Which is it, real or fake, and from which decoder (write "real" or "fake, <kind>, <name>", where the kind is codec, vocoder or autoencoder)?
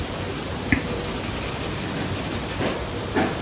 real